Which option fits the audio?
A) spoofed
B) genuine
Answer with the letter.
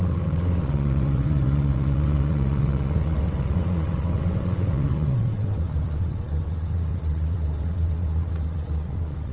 A